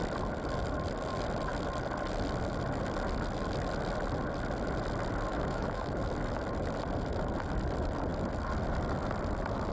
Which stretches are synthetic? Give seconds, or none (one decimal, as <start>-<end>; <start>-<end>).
5.3-6.0